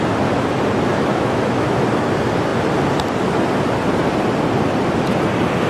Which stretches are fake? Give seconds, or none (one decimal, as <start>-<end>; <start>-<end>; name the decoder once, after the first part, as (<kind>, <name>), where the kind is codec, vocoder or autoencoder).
0.9-1.8 (autoencoder, DAC-VAE)